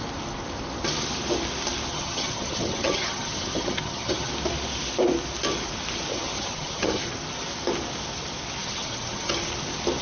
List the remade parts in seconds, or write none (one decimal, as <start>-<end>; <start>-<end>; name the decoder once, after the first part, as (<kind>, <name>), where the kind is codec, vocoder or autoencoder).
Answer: 1.9-4.3 (vocoder, HiFi-GAN); 6.1-7.0; 8.6-9.3

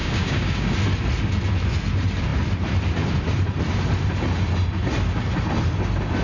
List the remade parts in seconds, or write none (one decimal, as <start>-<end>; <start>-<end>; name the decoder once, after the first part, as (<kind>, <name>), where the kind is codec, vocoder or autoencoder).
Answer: 0.0-0.7 (codec, DAC)

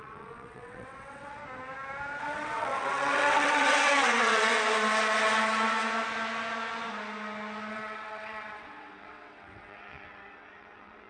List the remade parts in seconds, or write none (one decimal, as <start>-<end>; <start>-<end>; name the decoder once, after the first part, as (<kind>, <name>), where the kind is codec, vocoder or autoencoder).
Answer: 0.0-1.4 (vocoder, WaveNeXt); 2.2-4.5; 7.7-11.1

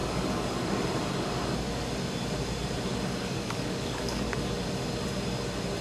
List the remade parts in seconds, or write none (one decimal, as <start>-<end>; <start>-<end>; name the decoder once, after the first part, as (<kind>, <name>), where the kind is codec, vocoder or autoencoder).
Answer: 0.0-1.0 (codec, DAC); 2.9-4.5

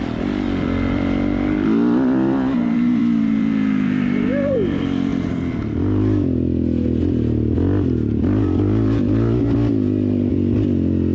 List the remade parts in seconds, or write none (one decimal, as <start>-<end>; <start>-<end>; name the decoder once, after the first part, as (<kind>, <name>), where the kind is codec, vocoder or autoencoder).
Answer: 0.0-5.1 (vocoder, BigVGAN v2); 10.3-11.1

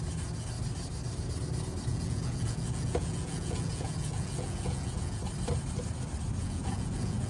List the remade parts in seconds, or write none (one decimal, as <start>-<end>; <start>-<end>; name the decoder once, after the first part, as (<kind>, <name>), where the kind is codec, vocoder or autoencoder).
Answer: 1.9-5.2 (vocoder, Vocos); 6.4-7.3

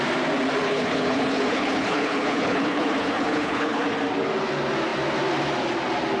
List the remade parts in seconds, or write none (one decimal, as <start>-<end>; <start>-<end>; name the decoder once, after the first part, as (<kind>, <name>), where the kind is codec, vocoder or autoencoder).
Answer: 0.6-3.8 (codec, HILCodec)

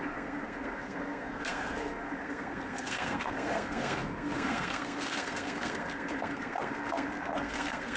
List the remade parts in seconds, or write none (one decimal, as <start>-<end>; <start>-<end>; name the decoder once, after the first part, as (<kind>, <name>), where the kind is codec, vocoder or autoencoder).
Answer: 0.0-8.0 (codec, SNAC)